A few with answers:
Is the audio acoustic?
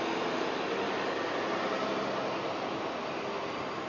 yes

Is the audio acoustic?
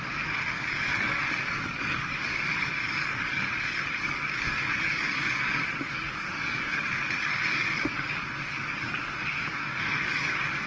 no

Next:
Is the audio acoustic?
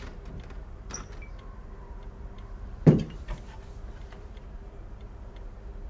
no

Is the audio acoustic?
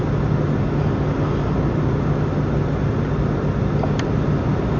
yes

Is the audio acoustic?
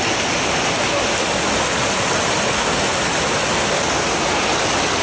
yes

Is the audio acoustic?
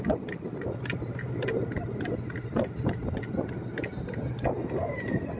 yes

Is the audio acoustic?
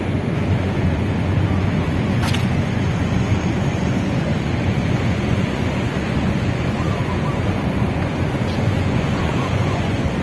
no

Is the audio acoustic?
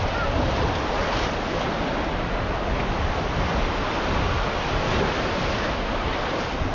yes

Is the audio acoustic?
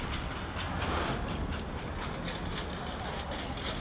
yes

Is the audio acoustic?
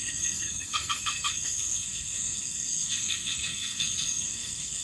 no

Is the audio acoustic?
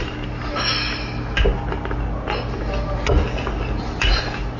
yes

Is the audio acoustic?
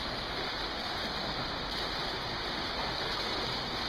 yes